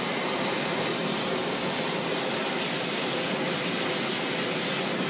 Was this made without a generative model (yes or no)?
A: yes